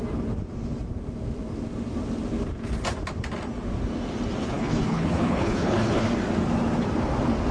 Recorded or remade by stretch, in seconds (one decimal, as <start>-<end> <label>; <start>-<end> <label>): 0.0-4.4 recorded; 4.4-6.1 remade; 6.1-7.5 recorded